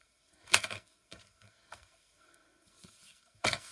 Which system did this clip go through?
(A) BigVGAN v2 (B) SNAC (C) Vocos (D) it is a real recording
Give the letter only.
B